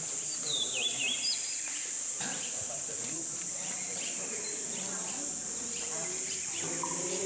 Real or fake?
fake